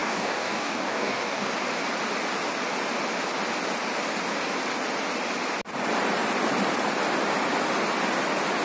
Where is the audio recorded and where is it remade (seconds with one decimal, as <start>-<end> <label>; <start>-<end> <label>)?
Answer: 0.0-1.5 remade; 1.5-8.6 recorded